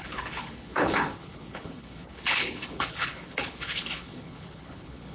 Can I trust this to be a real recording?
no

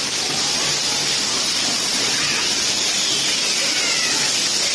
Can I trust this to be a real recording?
yes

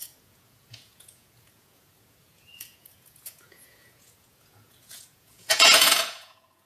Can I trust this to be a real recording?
no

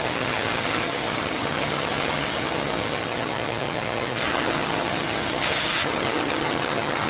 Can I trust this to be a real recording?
no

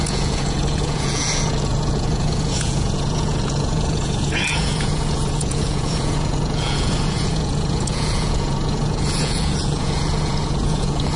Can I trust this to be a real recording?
no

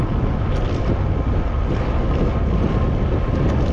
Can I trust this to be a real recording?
yes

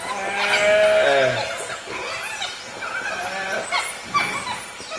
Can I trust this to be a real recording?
yes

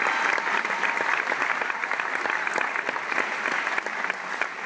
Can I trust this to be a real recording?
yes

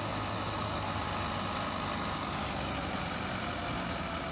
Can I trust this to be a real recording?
yes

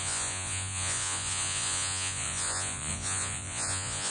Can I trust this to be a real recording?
no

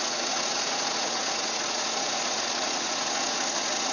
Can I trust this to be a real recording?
no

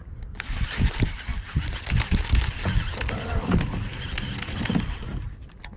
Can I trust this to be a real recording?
yes